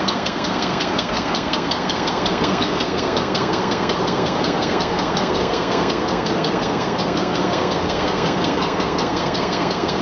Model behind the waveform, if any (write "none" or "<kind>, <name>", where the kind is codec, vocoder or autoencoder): codec, SNAC